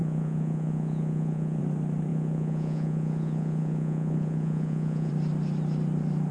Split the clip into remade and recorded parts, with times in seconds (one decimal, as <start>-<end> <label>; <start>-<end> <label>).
0.0-1.6 remade; 1.6-2.1 recorded; 2.1-5.1 remade; 5.1-6.3 recorded